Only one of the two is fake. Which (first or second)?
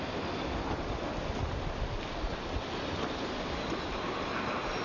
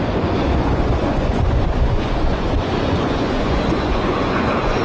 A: second